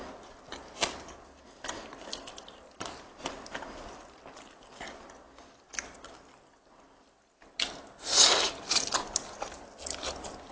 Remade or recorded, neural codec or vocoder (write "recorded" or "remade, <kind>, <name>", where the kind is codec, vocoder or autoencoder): recorded